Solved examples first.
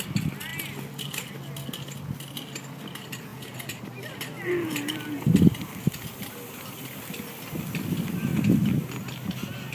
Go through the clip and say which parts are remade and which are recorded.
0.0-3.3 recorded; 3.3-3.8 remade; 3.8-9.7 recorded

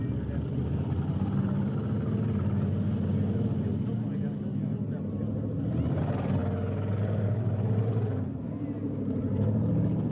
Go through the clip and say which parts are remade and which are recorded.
0.0-10.1 recorded

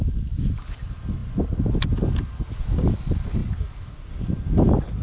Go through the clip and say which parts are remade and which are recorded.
0.0-5.0 recorded

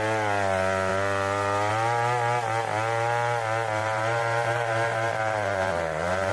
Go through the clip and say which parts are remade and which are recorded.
0.0-3.8 recorded; 3.8-6.3 remade

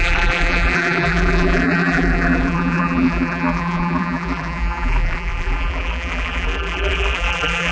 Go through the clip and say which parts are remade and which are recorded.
0.0-7.7 remade